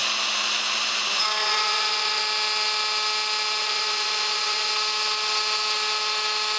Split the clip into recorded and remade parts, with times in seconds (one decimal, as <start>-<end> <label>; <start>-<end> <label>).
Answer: 0.0-1.4 recorded; 1.4-2.2 remade; 2.2-3.6 recorded; 3.6-4.7 remade; 4.7-6.6 recorded